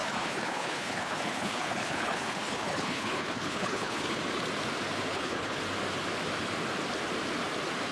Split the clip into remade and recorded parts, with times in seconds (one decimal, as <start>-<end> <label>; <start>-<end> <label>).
0.0-4.2 remade; 4.2-5.1 recorded; 5.1-5.6 remade; 5.6-7.9 recorded